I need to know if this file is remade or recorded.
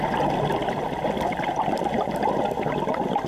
recorded